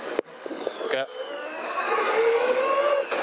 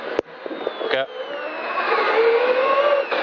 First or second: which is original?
second